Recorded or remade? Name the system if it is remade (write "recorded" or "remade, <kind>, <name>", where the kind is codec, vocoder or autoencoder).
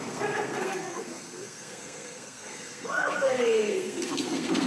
remade, codec, SNAC